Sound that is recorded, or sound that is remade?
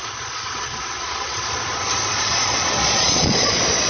remade